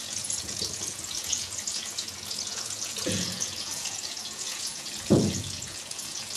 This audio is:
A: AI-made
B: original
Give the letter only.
A